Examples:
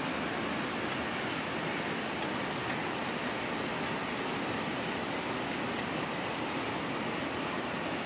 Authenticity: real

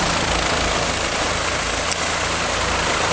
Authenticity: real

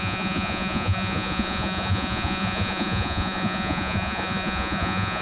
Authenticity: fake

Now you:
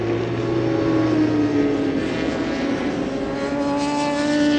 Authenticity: real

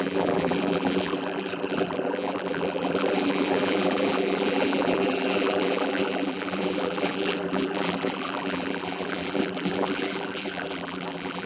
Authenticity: fake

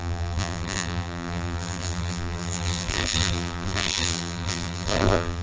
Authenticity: fake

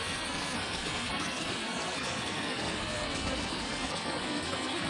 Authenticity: fake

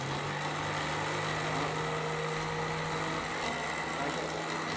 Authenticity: real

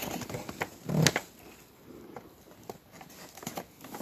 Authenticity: real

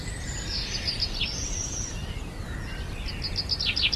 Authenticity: real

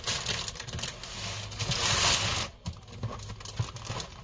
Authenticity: real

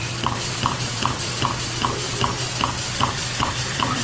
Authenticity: fake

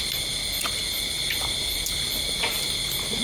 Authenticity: real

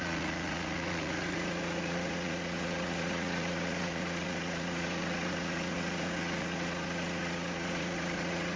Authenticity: fake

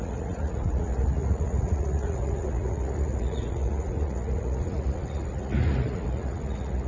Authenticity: fake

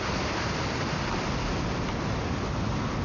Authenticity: real